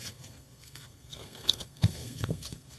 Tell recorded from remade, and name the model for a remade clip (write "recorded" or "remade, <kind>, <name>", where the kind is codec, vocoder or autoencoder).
remade, codec, SNAC